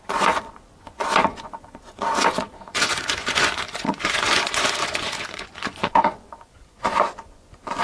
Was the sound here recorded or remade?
remade